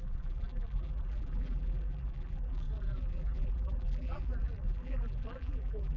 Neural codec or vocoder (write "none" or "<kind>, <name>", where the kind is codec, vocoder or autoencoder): vocoder, BigVGAN v2